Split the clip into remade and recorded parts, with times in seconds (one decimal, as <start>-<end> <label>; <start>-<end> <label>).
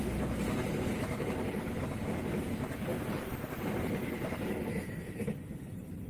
0.0-2.9 recorded; 2.9-5.1 remade; 5.1-5.5 recorded; 5.5-6.1 remade